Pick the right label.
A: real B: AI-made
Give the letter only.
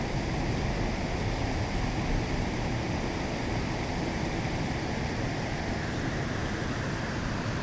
A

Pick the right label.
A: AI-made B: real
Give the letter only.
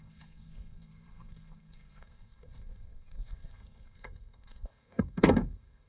A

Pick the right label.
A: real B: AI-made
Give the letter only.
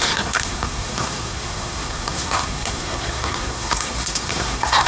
B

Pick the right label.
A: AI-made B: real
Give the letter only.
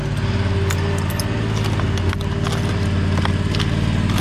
B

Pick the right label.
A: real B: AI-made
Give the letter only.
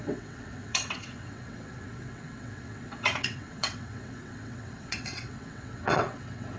B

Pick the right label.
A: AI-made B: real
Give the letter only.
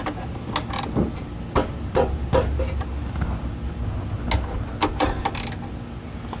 B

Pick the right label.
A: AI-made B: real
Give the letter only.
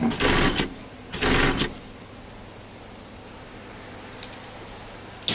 B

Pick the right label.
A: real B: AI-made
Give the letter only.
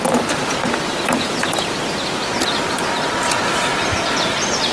A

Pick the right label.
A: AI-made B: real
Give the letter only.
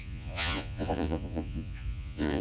A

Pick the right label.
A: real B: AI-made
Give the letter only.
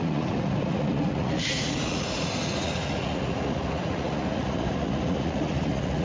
B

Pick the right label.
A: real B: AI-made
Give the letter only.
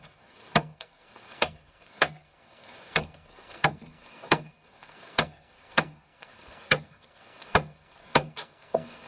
B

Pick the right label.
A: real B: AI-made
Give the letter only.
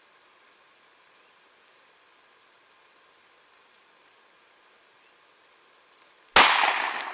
A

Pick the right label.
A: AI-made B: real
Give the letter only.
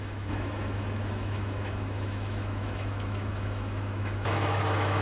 A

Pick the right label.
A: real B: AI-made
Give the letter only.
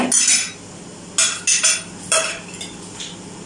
A